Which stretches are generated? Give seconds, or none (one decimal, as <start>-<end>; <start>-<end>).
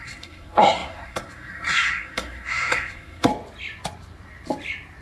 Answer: 0.0-3.3